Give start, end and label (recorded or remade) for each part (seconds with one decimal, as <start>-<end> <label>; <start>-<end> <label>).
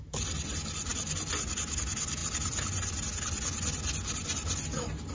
0.0-5.1 recorded